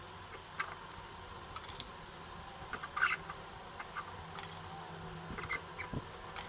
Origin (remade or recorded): recorded